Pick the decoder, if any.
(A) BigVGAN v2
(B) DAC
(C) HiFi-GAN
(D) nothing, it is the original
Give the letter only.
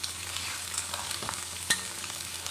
B